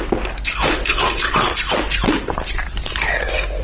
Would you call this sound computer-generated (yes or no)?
no